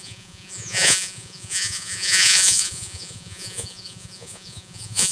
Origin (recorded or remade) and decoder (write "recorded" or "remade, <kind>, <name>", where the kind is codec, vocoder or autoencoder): remade, vocoder, Vocos